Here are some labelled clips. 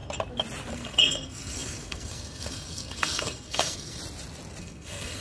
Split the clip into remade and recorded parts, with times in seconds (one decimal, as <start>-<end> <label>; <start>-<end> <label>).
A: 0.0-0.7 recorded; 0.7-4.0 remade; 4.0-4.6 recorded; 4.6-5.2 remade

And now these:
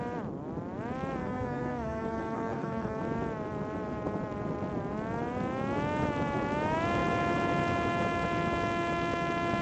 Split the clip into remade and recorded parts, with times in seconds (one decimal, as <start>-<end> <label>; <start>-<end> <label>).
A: 0.0-1.2 recorded; 1.2-3.0 remade; 3.0-9.6 recorded

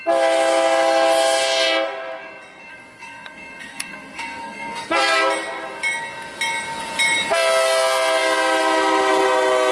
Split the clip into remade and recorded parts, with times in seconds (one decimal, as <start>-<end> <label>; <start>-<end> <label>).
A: 0.0-2.7 recorded; 2.7-5.0 remade; 5.0-9.7 recorded

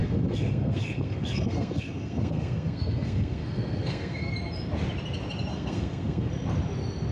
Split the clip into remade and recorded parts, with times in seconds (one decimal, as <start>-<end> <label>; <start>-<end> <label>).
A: 0.0-4.3 remade; 4.3-5.5 recorded; 5.5-6.3 remade; 6.3-7.1 recorded

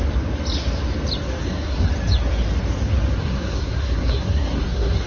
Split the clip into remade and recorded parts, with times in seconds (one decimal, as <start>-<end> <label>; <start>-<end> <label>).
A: 0.0-1.4 recorded; 1.4-1.9 remade; 1.9-3.2 recorded; 3.2-5.1 remade